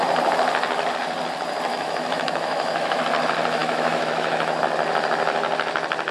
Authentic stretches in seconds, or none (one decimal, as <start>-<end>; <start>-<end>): 0.0-1.7; 3.0-3.6; 4.6-6.1